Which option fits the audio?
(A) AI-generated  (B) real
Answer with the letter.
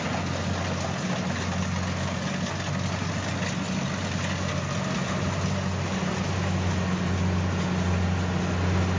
B